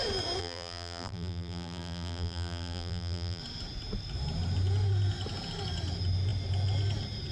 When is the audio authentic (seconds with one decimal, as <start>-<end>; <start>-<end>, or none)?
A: 0.0-0.4; 3.4-7.3